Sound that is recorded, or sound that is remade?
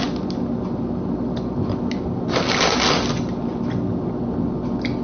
recorded